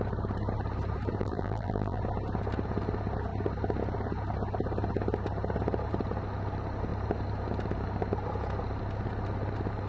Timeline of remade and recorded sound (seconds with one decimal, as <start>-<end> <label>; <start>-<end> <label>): 0.0-1.2 recorded; 1.2-2.0 remade; 2.0-9.9 recorded